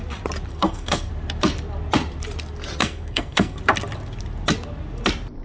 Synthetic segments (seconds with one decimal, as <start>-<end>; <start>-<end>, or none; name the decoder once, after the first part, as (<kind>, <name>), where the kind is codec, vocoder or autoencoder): 0.5-1.1 (codec, SNAC); 2.8-3.6